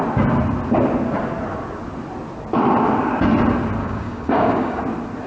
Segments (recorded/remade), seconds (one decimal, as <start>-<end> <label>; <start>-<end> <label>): 0.0-3.8 recorded; 3.8-4.8 remade; 4.8-5.3 recorded